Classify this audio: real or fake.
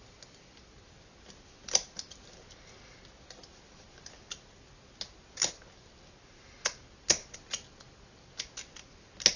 real